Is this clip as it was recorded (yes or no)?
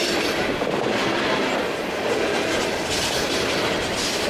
yes